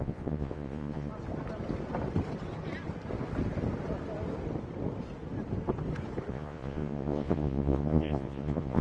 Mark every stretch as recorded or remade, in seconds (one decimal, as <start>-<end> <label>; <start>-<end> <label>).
0.0-1.1 remade; 1.1-6.3 recorded; 6.3-8.8 remade